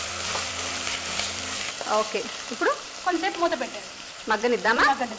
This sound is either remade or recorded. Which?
remade